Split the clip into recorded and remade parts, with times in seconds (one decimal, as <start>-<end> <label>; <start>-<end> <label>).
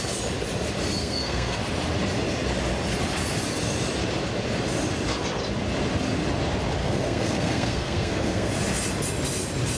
0.0-1.0 recorded; 1.0-1.6 remade; 1.6-6.8 recorded; 6.8-8.5 remade; 8.5-9.8 recorded